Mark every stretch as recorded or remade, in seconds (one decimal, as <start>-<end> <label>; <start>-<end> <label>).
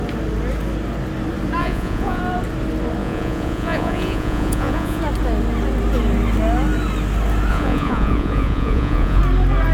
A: 0.0-1.6 recorded; 1.6-2.2 remade; 2.2-3.0 recorded; 3.0-5.0 remade; 5.0-7.5 recorded; 7.5-9.2 remade; 9.2-9.7 recorded